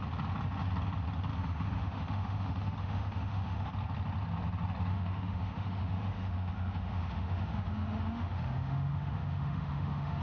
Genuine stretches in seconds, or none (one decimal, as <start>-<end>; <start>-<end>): 0.0-1.3; 3.7-4.9